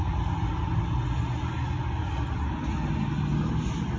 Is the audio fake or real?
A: real